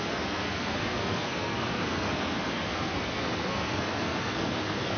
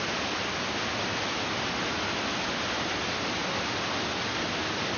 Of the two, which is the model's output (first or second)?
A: first